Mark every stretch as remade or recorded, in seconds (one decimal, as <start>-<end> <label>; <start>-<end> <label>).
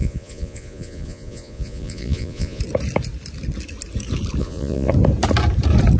0.0-2.6 remade; 2.6-4.4 recorded; 4.4-4.9 remade; 4.9-6.0 recorded